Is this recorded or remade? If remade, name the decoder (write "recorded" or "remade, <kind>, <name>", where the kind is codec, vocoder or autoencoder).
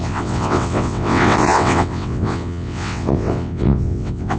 remade, vocoder, WaveNeXt